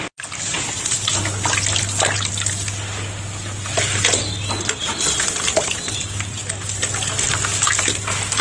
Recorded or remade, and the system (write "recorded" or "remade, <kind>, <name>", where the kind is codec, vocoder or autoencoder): recorded